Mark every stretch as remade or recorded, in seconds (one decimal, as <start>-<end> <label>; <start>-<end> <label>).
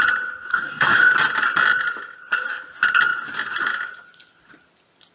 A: 0.0-0.5 recorded; 0.5-1.1 remade; 1.1-5.1 recorded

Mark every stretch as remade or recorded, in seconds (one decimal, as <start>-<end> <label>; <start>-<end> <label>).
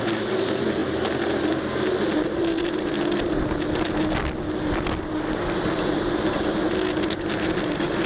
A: 0.0-8.1 recorded